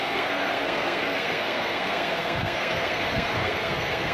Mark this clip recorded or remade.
remade